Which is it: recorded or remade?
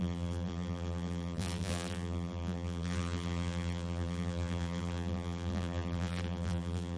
remade